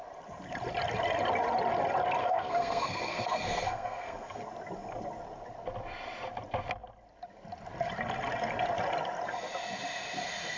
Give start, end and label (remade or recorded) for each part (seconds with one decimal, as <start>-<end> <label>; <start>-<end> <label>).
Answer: 0.0-2.2 recorded; 2.2-4.4 remade; 4.4-10.6 recorded